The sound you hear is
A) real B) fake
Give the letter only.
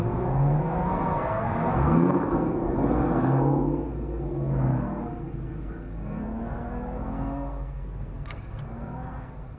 B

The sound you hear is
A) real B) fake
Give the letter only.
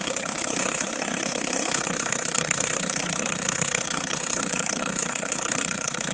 B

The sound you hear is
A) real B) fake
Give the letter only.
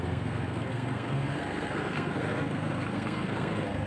B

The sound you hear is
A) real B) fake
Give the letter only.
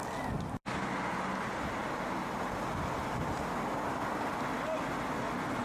A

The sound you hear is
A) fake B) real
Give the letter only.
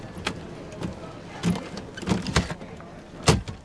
B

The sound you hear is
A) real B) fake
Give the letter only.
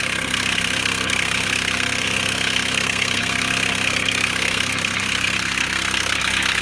B